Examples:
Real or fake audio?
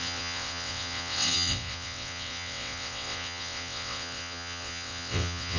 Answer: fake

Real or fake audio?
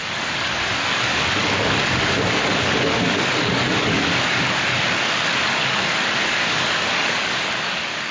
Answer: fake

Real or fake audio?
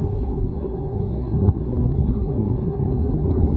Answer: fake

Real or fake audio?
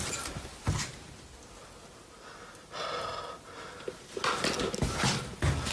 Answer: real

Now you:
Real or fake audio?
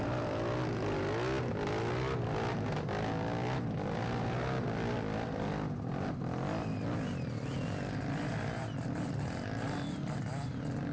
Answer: real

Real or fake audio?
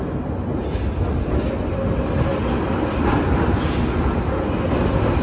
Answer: real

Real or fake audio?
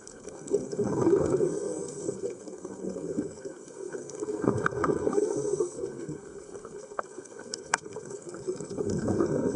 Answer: fake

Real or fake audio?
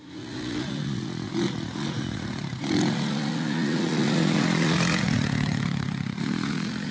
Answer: fake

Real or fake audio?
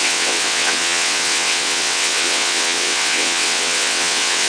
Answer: fake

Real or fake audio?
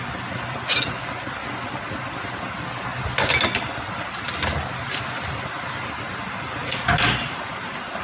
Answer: real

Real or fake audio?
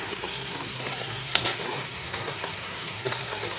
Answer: fake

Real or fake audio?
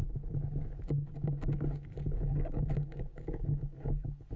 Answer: fake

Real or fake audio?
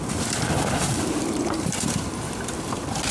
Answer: fake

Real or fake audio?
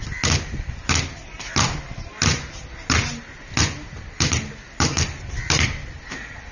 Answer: real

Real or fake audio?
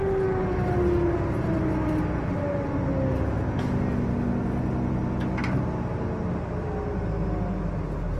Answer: real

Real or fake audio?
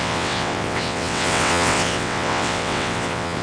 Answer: fake